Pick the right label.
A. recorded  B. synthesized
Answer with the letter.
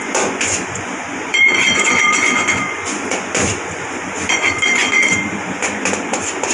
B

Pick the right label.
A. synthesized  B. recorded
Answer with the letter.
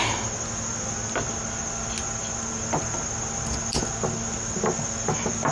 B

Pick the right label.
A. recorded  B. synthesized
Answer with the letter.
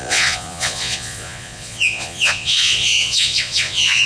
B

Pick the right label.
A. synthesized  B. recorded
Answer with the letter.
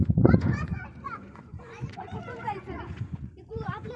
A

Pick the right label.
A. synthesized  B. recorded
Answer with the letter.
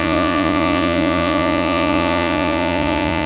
A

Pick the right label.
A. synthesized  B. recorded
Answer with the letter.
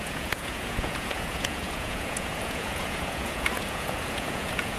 A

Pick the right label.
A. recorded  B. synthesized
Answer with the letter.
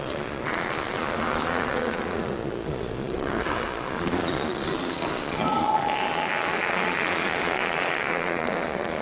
B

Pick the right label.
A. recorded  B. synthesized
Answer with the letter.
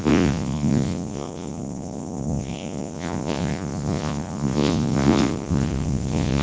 B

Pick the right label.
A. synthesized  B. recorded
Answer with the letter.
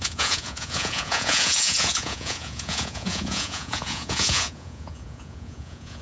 A